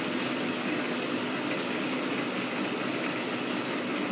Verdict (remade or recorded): recorded